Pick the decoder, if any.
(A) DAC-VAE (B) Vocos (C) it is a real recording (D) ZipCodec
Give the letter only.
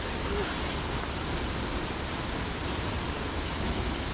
C